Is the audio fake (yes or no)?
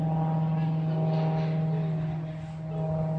no